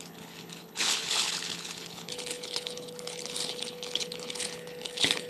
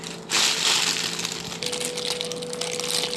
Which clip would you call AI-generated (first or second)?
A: first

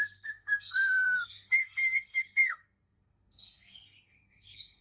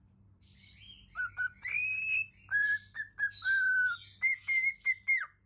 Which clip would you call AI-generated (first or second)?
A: first